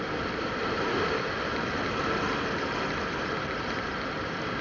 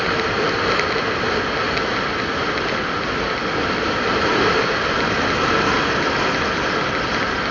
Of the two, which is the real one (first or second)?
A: second